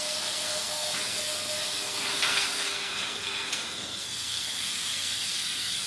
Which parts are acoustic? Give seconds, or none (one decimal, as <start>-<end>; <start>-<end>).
none